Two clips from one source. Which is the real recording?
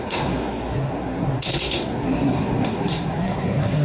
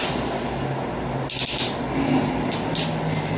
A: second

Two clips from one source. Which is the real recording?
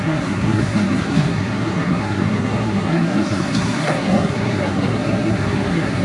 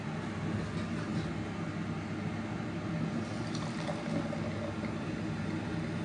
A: second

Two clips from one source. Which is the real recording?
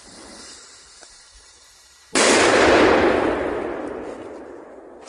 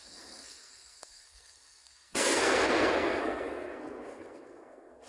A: first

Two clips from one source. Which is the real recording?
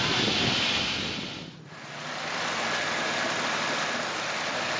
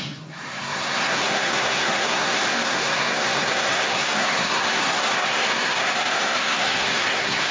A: first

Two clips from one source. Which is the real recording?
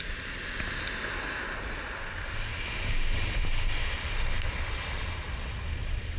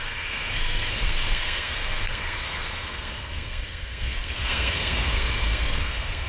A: first